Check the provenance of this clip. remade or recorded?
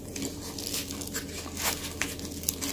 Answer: recorded